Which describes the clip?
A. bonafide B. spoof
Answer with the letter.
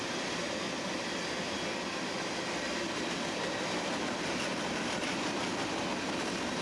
A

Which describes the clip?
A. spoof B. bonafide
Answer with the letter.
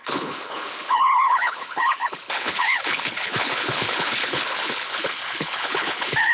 A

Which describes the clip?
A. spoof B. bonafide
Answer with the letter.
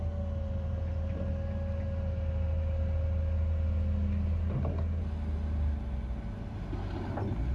B